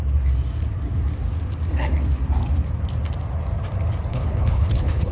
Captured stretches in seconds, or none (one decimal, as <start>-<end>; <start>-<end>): 0.0-4.1